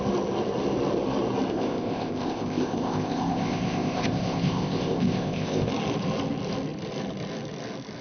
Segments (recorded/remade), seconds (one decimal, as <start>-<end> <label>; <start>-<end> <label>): 0.0-1.5 recorded; 1.5-5.7 remade; 5.7-8.0 recorded